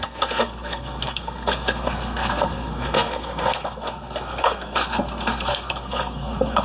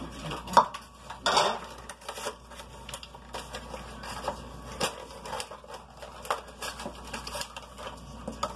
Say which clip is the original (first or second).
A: second